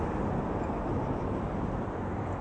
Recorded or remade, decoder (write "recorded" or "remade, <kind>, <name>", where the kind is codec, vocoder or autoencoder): recorded